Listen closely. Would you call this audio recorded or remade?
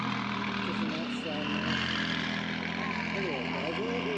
recorded